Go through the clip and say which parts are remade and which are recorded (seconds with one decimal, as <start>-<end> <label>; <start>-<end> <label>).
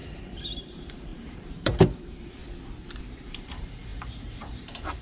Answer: 0.0-2.4 remade; 2.4-3.0 recorded; 3.0-5.0 remade